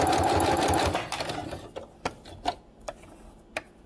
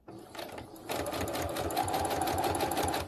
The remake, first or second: second